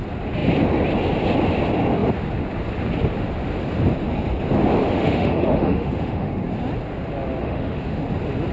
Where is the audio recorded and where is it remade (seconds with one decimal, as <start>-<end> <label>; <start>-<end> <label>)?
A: 0.0-4.8 recorded; 4.8-6.3 remade; 6.3-7.4 recorded; 7.4-8.0 remade; 8.0-8.5 recorded